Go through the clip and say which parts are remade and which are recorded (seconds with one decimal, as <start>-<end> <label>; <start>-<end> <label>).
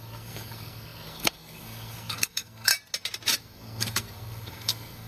0.0-2.7 remade; 2.7-3.4 recorded; 3.4-5.1 remade